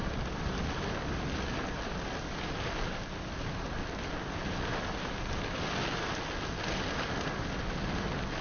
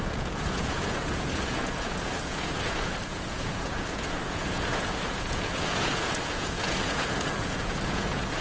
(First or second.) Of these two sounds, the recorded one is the first